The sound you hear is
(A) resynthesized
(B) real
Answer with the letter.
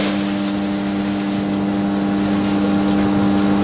B